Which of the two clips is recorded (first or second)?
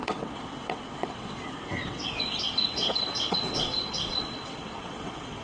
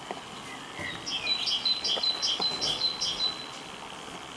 second